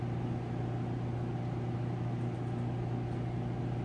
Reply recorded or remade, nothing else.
recorded